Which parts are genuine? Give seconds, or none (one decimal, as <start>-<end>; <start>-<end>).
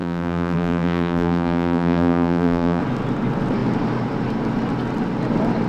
2.8-5.7